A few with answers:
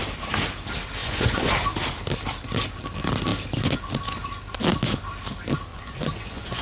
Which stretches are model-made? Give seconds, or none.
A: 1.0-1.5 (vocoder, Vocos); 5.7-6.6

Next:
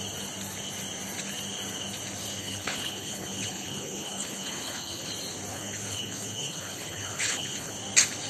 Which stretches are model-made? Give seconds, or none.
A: 2.4-5.1 (codec, HILCodec); 5.5-7.7

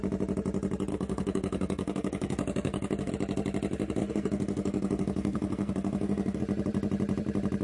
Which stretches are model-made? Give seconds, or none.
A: 0.9-3.1 (codec, SNAC); 4.0-6.4